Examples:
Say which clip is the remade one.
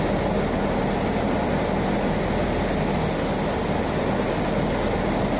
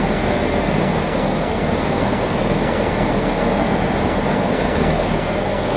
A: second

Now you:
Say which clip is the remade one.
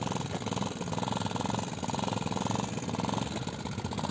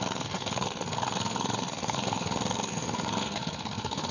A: second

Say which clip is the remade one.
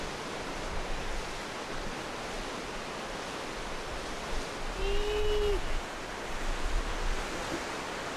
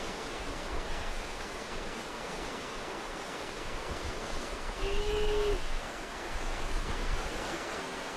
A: second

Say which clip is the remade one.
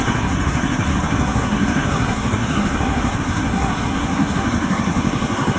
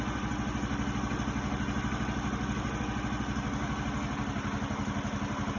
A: first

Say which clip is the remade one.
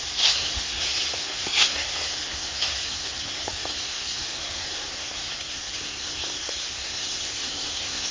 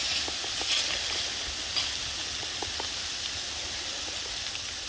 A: first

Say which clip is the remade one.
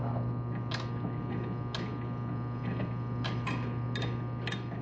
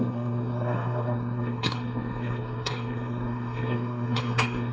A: second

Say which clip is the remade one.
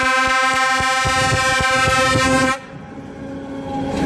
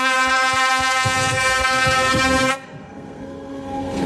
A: second